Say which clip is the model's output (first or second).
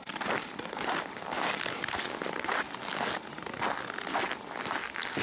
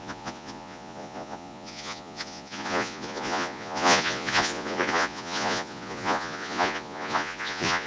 second